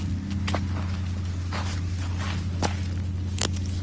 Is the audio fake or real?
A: real